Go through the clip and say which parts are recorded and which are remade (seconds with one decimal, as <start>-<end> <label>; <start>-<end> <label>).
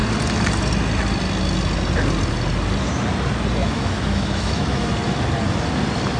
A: 0.0-3.6 recorded; 3.6-4.9 remade; 4.9-6.2 recorded